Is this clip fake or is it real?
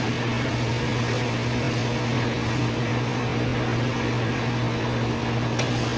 real